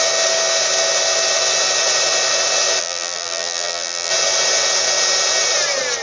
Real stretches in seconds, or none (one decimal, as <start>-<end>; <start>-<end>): 0.0-2.8; 4.1-6.0